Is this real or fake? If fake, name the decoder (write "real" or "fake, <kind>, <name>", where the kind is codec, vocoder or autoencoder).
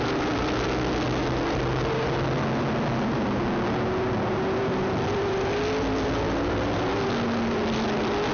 real